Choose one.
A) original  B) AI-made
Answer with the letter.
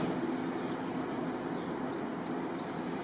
A